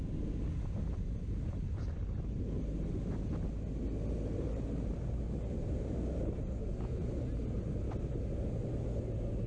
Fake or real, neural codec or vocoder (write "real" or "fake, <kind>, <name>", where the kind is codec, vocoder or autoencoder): real